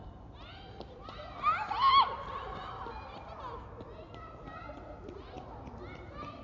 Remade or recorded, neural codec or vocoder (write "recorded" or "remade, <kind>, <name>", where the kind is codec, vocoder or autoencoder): recorded